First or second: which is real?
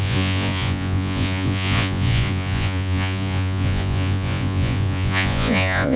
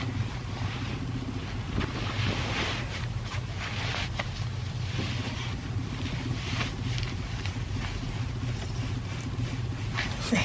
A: second